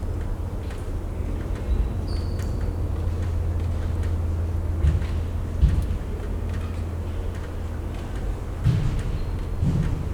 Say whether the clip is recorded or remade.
recorded